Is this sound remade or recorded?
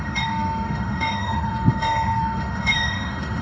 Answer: remade